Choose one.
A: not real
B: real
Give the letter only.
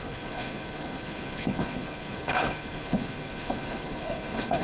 A